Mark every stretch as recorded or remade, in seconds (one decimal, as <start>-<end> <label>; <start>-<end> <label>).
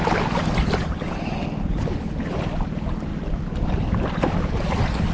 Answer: 0.0-5.1 recorded